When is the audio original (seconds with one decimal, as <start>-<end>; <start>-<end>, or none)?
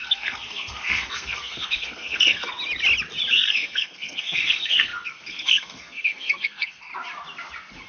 2.5-3.3; 6.9-7.9